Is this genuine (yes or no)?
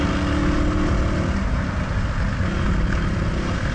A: yes